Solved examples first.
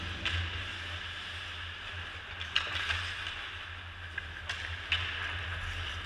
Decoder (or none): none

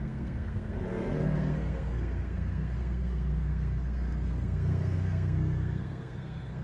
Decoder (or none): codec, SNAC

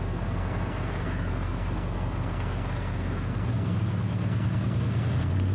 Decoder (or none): codec, SNAC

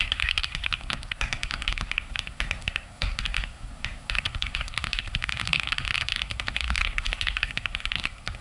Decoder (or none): codec, SNAC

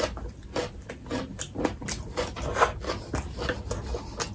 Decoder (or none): none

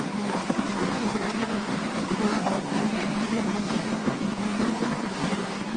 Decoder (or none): codec, SNAC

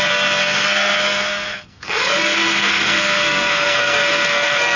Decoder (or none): codec, SNAC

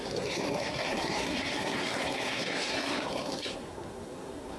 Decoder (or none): codec, SNAC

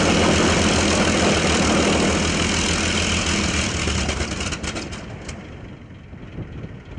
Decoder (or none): none